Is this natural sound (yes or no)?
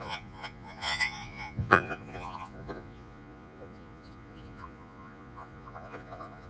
no